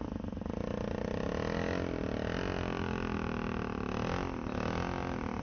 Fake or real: real